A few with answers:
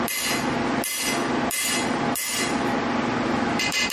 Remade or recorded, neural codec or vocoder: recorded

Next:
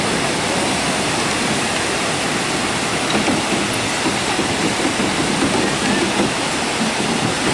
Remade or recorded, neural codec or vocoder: recorded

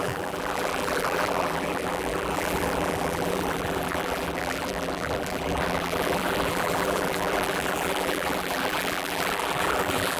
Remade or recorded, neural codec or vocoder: remade, vocoder, BigVGAN v2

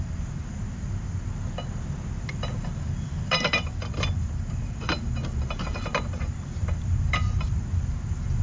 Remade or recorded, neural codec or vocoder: remade, vocoder, BigVGAN v2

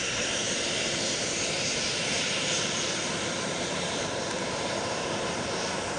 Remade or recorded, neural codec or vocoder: remade, vocoder, BigVGAN v2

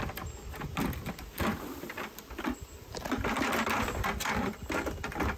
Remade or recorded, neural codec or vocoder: remade, vocoder, BigVGAN v2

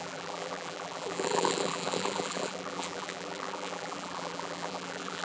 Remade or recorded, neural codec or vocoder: remade, vocoder, BigVGAN v2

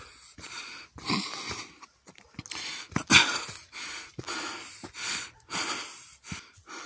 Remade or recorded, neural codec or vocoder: recorded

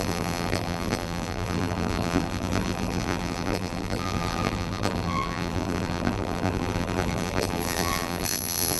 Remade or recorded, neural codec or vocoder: remade, vocoder, BigVGAN v2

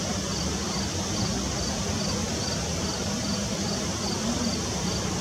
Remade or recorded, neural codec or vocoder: recorded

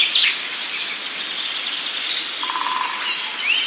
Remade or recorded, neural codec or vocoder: recorded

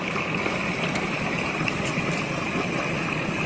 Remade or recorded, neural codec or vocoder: recorded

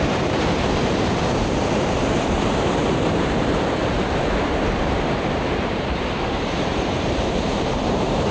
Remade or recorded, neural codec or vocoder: remade, vocoder, BigVGAN v2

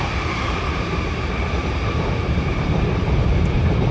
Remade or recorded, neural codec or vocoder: remade, vocoder, BigVGAN v2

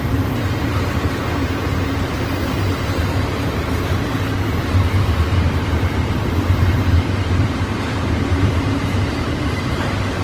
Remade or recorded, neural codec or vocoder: remade, vocoder, BigVGAN v2